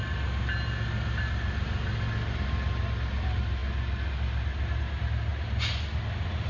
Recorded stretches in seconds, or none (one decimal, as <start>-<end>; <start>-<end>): 0.0-6.5